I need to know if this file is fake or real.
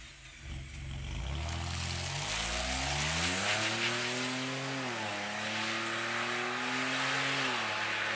real